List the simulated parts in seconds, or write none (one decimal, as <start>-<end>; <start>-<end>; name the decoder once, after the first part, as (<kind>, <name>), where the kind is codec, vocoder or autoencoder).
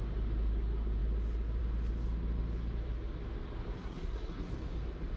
3.8-4.5 (codec, SNAC)